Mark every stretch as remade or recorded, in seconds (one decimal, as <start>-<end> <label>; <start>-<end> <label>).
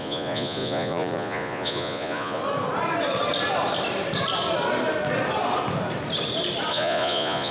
0.0-2.4 remade; 2.4-6.7 recorded; 6.7-7.5 remade